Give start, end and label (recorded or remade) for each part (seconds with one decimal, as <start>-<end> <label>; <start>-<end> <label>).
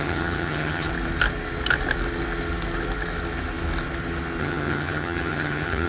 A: 0.0-0.9 remade; 0.9-4.4 recorded; 4.4-5.9 remade